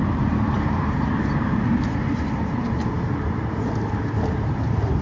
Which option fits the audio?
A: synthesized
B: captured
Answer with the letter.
A